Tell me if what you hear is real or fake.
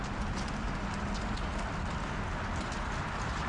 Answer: real